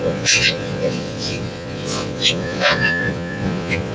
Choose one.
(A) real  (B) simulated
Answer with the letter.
B